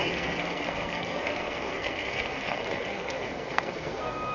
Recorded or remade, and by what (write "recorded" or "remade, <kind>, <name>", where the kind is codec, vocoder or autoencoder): remade, codec, SNAC